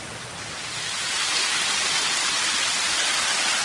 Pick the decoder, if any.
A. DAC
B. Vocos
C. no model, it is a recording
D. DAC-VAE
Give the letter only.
C